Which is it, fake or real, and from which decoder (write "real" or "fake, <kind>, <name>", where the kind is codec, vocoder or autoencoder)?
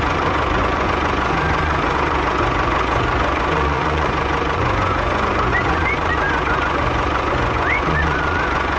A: fake, vocoder, Vocos